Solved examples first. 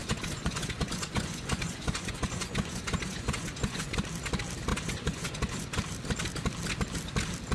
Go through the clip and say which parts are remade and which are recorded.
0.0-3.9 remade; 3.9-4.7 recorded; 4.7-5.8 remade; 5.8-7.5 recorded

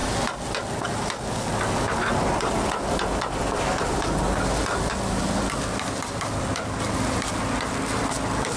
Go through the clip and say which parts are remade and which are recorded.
0.0-8.6 recorded

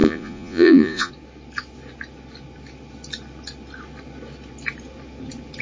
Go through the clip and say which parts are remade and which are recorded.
0.0-1.1 remade; 1.1-5.6 recorded

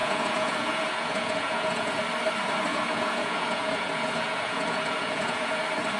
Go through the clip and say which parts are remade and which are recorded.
0.0-2.0 remade; 2.0-2.7 recorded; 2.7-5.6 remade; 5.6-6.0 recorded